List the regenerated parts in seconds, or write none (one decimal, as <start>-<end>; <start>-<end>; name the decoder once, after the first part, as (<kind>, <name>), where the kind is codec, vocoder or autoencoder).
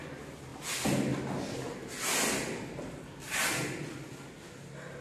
none